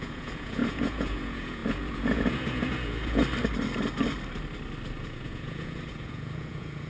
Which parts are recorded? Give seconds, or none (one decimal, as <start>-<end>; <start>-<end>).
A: 3.2-5.0